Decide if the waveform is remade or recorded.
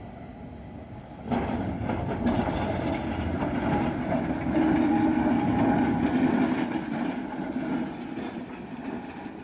recorded